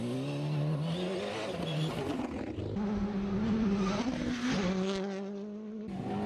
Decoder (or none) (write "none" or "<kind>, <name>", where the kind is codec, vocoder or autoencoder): none